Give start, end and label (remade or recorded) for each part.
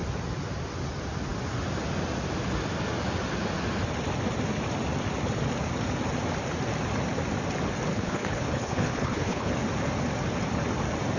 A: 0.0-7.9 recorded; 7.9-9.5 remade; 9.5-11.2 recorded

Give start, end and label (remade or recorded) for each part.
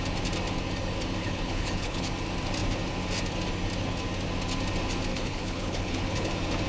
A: 0.0-1.2 recorded; 1.2-2.1 remade; 2.1-5.1 recorded; 5.1-6.3 remade; 6.3-6.7 recorded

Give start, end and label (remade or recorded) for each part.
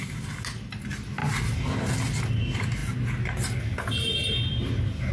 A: 0.0-5.1 recorded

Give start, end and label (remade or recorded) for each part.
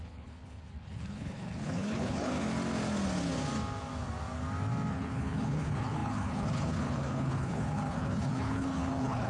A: 0.0-2.3 remade; 2.3-4.9 recorded; 4.9-9.3 remade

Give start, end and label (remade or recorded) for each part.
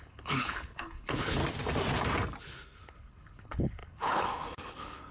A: 0.0-1.4 remade; 1.4-2.4 recorded; 2.4-5.1 remade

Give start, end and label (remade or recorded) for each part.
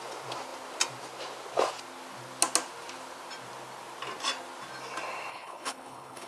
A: 0.0-5.3 recorded; 5.3-6.3 remade